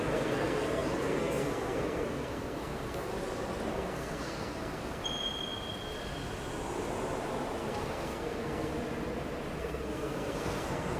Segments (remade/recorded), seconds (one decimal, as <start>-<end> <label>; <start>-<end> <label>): 0.0-3.1 remade; 3.1-3.7 recorded; 3.7-5.0 remade; 5.0-7.6 recorded; 7.6-8.7 remade; 8.7-9.6 recorded; 9.6-11.0 remade